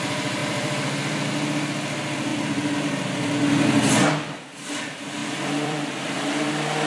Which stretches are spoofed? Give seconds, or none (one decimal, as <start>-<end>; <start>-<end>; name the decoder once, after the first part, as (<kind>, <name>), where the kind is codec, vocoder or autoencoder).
0.4-1.3 (vocoder, BigVGAN v2); 2.3-3.4; 5.2-6.5